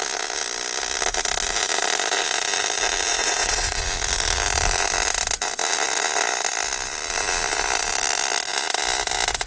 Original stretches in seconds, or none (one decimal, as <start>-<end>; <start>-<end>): 0.0-3.1; 3.8-9.5